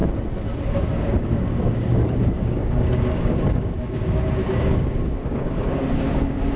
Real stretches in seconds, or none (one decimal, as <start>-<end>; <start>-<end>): 0.0-0.7